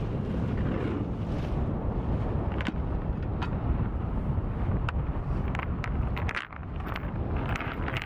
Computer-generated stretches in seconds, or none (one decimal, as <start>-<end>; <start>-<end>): 3.3-5.9; 6.6-7.3